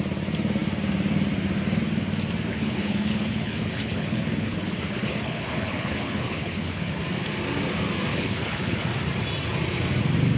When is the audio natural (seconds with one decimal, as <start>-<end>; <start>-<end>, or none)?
0.0-2.5; 7.0-8.1; 8.9-10.4